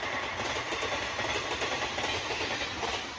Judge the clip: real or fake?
real